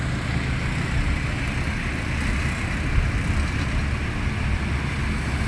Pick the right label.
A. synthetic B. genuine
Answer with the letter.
B